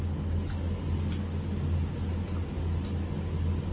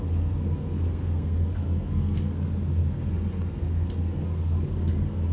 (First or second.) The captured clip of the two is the first